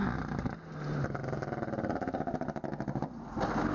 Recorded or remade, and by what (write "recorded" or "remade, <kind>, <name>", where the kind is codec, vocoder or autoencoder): recorded